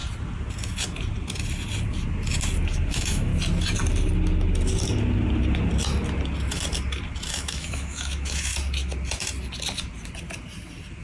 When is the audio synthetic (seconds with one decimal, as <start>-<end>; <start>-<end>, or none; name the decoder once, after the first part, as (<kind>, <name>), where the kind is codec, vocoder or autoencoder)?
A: 2.9-3.3 (autoencoder, DAC-VAE); 7.3-8.5